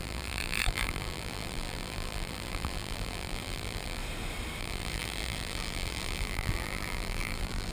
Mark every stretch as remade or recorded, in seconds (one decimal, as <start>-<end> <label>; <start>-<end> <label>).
0.0-4.0 remade; 4.0-4.6 recorded; 4.6-7.7 remade